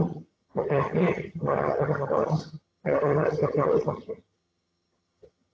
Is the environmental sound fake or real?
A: fake